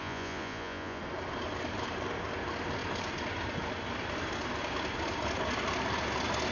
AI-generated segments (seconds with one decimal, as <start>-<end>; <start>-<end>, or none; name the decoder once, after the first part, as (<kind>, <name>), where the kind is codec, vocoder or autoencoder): 0.0-1.0 (vocoder, Vocos)